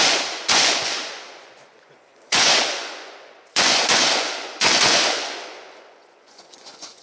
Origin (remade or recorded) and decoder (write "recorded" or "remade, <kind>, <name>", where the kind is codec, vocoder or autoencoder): remade, vocoder, Vocos